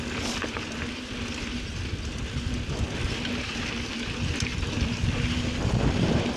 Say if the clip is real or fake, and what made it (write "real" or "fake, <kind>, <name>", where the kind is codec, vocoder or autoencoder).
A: real